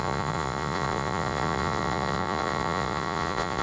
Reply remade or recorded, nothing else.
remade